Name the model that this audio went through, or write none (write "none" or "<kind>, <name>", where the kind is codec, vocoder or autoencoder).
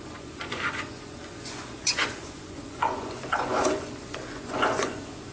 vocoder, Vocos